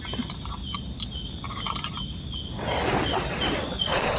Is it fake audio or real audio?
real